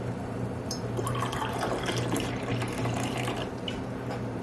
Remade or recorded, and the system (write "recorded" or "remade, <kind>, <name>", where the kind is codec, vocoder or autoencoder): remade, vocoder, BigVGAN v2